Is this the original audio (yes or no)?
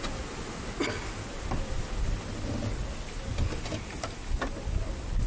yes